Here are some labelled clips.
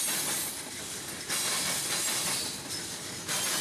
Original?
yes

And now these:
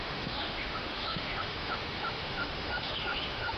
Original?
no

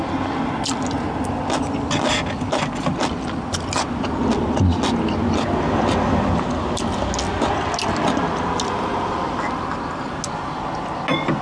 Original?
yes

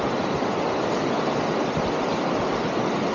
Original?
yes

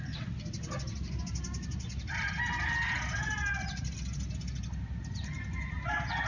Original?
yes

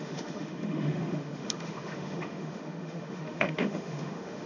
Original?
no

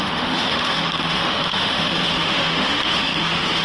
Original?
no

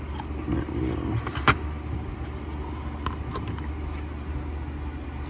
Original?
yes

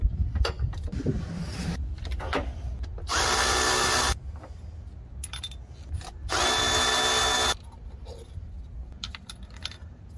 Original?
yes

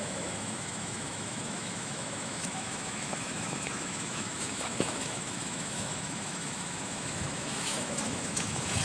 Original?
no